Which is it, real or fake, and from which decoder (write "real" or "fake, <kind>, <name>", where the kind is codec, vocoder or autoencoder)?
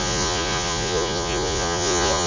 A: fake, vocoder, Vocos